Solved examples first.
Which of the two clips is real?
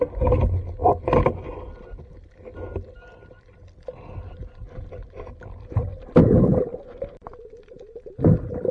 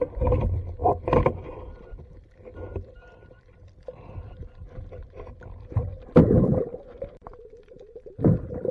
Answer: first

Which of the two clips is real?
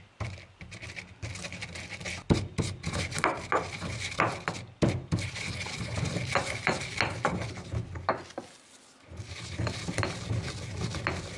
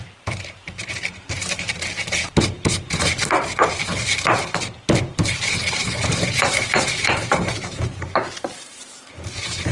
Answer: first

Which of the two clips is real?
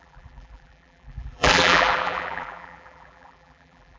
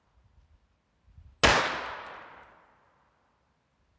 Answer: second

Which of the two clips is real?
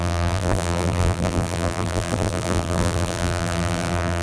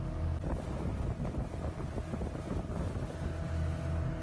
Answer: second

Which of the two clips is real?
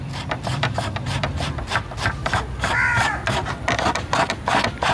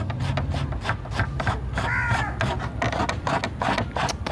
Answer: second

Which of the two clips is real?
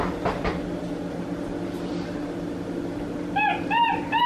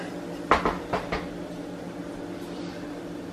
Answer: second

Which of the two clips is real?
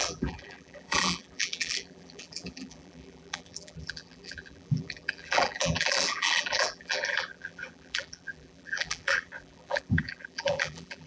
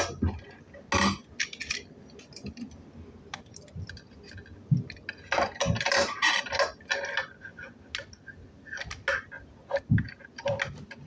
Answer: second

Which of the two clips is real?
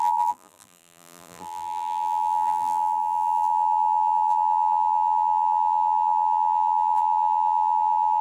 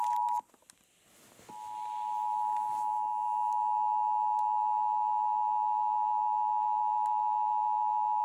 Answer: second